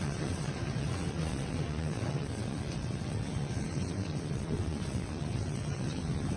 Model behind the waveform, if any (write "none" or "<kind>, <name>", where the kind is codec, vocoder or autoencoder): vocoder, WaveNeXt